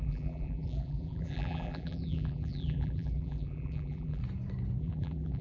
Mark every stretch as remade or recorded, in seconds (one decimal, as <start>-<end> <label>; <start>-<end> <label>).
0.0-4.2 remade; 4.2-4.8 recorded; 4.8-5.4 remade